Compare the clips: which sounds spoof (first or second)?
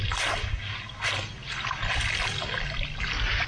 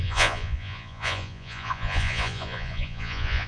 second